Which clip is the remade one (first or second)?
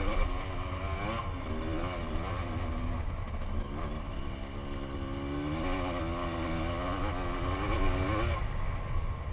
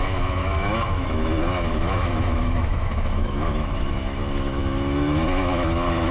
second